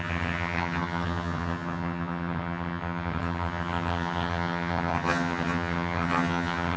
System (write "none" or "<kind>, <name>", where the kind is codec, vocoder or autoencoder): vocoder, HiFi-GAN